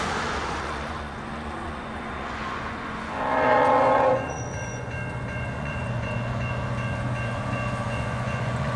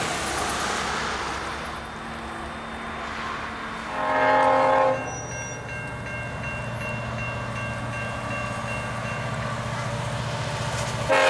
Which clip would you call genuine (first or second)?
second